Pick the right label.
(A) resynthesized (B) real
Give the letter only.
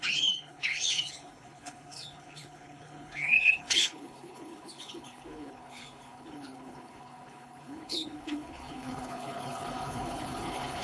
A